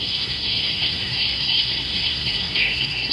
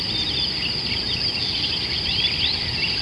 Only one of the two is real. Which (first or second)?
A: second